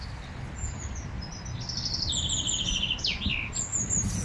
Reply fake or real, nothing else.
real